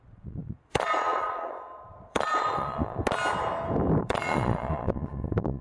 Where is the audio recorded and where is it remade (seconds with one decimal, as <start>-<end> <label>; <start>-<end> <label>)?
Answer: 0.0-3.0 remade; 3.0-4.0 recorded; 4.0-5.6 remade